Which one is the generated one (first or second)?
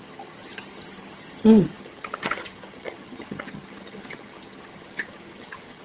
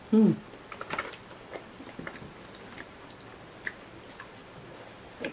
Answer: first